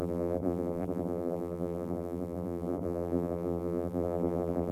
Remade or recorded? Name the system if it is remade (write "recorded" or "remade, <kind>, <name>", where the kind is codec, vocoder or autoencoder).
remade, vocoder, BigVGAN v2